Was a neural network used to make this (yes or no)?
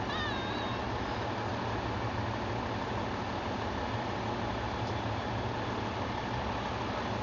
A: no